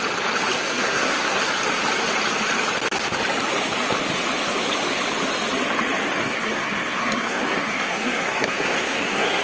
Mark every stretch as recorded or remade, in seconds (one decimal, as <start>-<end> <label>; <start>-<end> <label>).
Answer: 0.0-0.6 recorded; 0.6-1.4 remade; 1.4-6.2 recorded; 6.2-9.4 remade